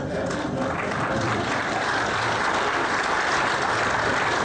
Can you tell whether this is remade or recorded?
remade